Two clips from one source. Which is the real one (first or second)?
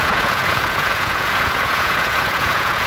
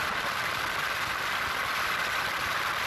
second